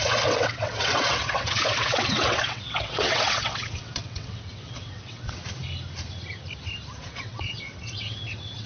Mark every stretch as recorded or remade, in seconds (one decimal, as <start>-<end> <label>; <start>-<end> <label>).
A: 0.0-5.4 remade; 5.4-7.0 recorded; 7.0-8.7 remade